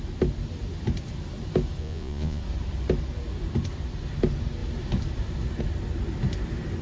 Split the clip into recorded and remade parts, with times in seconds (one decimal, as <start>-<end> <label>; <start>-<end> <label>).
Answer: 0.0-1.8 recorded; 1.8-2.4 remade; 2.4-6.8 recorded